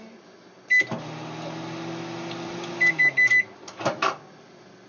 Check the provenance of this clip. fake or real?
real